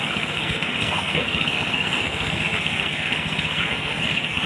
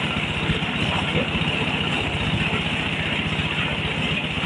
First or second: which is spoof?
first